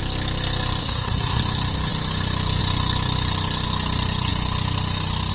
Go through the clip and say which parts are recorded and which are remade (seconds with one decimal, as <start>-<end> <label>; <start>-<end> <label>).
0.0-0.8 recorded; 0.8-1.4 remade; 1.4-5.3 recorded

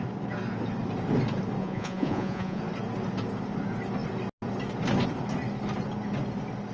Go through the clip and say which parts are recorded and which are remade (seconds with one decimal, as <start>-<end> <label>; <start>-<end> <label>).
0.0-1.6 recorded; 1.6-2.6 remade; 2.6-6.7 recorded

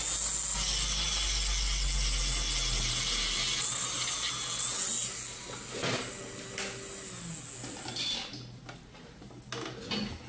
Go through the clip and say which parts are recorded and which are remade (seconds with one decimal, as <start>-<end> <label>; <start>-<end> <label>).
0.0-10.3 recorded